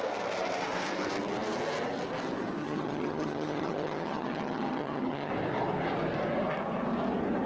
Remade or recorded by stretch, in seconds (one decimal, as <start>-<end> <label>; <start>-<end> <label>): 0.0-2.6 recorded; 2.6-5.3 remade; 5.3-7.5 recorded